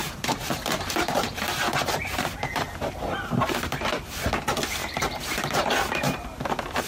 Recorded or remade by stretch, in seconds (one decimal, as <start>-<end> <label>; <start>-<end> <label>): 0.0-4.1 remade; 4.1-4.8 recorded; 4.8-5.7 remade; 5.7-6.9 recorded